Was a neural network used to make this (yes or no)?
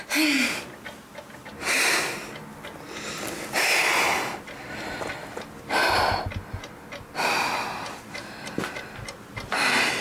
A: no